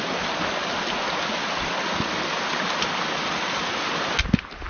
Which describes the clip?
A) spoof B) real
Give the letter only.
B